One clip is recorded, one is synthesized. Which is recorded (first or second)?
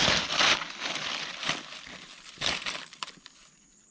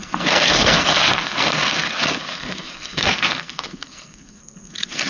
first